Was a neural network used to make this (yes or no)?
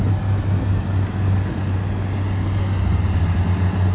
no